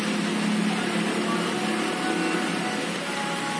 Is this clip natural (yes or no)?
yes